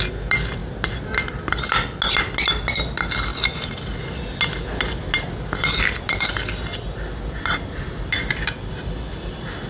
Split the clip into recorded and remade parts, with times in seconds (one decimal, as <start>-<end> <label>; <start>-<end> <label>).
0.0-9.7 recorded